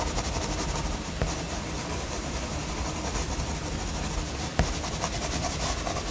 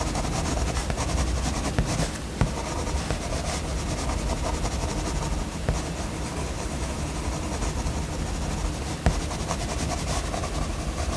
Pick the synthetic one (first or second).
first